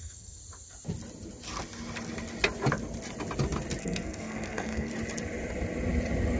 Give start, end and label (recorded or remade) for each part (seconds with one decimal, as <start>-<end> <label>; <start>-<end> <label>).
0.0-0.4 remade; 0.4-3.8 recorded; 3.8-4.9 remade; 4.9-6.4 recorded